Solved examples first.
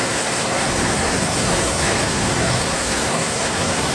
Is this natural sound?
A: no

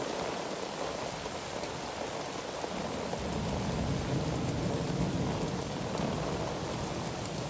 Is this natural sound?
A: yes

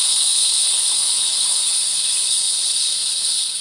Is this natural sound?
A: no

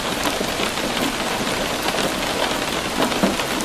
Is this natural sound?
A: yes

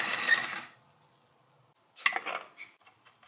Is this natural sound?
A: yes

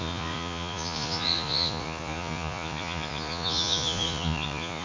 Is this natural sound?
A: no